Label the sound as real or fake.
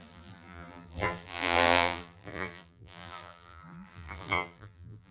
fake